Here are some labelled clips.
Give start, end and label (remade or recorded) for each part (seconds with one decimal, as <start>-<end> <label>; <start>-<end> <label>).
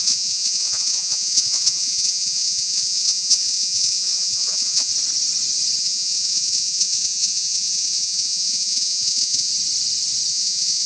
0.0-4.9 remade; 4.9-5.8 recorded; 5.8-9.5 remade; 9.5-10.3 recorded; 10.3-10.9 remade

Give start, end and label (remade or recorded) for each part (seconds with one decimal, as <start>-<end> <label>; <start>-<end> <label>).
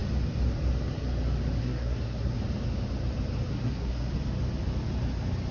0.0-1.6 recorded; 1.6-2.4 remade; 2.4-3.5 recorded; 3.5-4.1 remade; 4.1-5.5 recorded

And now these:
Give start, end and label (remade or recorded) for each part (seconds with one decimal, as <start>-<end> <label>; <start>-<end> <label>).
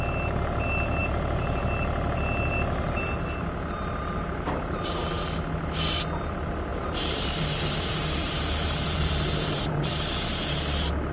0.0-1.0 recorded; 1.0-1.6 remade; 1.6-4.0 recorded; 4.0-5.1 remade; 5.1-6.7 recorded; 6.7-9.9 remade; 9.9-11.1 recorded